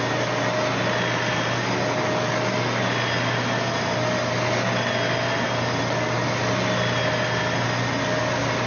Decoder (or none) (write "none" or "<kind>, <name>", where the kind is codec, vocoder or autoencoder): none